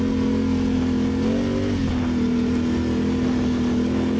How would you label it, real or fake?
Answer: real